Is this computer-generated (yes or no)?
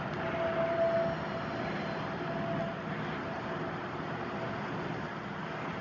no